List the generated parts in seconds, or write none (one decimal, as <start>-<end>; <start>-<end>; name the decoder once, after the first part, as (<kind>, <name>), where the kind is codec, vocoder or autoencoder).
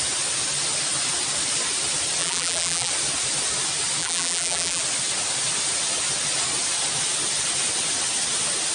2.2-2.9 (vocoder, BigVGAN v2); 4.0-4.8